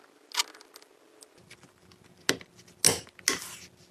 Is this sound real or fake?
real